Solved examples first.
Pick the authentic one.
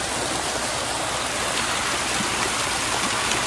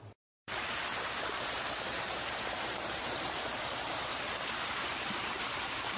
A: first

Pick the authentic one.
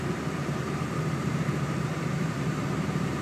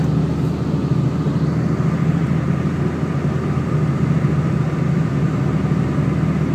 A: second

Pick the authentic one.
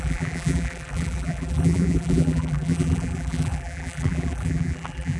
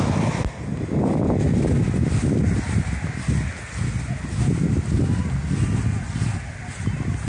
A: second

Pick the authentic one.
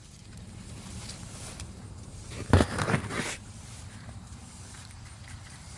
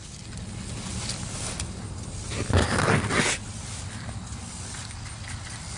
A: second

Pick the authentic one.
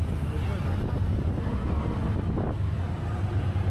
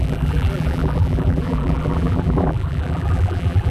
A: first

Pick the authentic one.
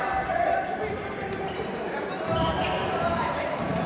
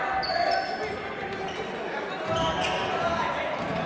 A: second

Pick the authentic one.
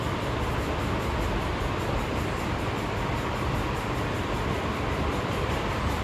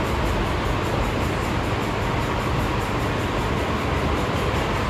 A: second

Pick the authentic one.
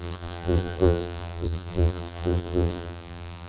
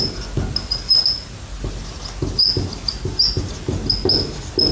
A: second